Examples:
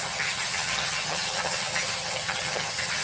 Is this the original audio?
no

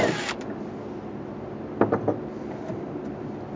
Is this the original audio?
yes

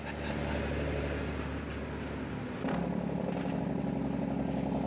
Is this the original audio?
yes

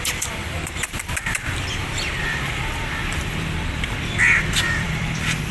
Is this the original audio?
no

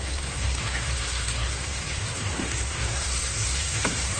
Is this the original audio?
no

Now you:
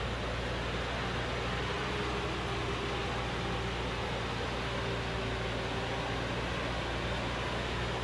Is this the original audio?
yes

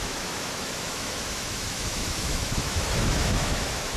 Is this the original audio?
no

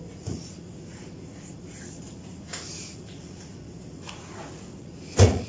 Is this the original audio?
no